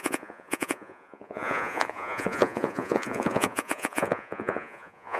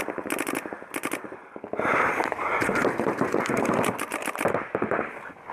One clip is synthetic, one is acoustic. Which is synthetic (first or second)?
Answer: first